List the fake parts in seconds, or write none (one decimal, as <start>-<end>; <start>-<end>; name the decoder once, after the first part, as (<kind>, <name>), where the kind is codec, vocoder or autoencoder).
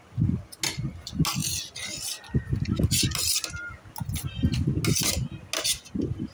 none